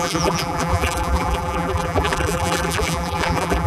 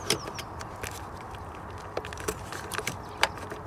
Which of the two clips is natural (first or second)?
second